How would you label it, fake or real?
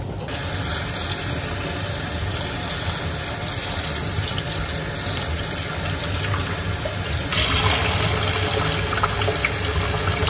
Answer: real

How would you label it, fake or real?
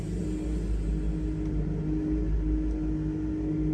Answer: real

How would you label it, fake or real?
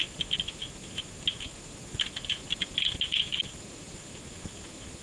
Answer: real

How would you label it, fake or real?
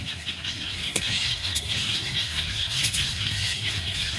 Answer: fake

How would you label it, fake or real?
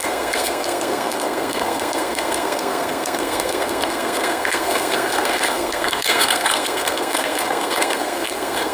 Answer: fake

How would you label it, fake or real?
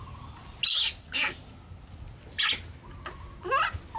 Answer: real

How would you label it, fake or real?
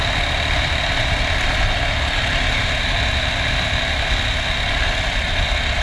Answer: real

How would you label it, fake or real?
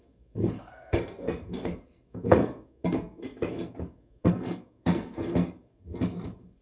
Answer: fake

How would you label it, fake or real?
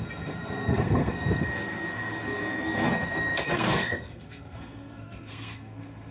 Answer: fake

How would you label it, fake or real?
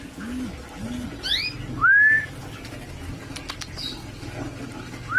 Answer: real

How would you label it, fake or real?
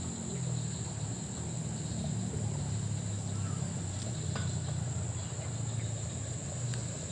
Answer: real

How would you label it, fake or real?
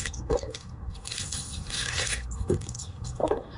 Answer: fake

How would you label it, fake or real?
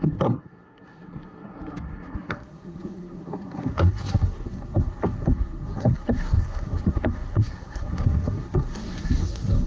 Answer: fake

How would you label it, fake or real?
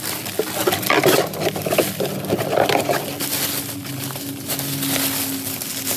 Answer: real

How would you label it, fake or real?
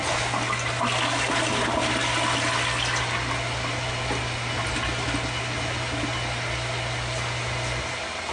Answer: real